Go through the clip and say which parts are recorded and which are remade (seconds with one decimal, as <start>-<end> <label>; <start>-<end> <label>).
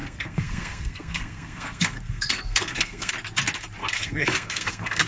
0.0-3.1 remade; 3.1-3.8 recorded; 3.8-5.1 remade